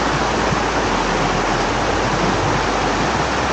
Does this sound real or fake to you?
real